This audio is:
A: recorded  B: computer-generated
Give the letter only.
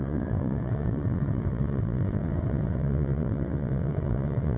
B